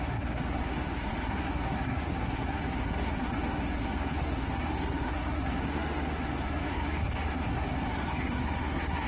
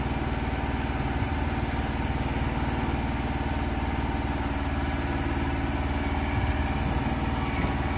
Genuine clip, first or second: second